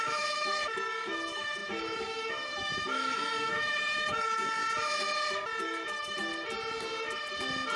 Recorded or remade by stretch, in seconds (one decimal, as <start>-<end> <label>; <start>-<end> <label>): 0.0-4.6 remade; 4.6-5.6 recorded; 5.6-6.3 remade; 6.3-7.8 recorded